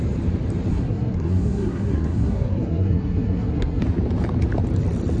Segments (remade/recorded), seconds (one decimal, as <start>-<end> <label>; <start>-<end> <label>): 0.0-0.7 recorded; 0.7-3.8 remade; 3.8-5.2 recorded